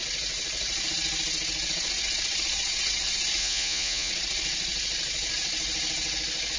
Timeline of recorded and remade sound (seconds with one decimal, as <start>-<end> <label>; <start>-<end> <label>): 0.0-3.4 recorded; 3.4-4.1 remade; 4.1-6.6 recorded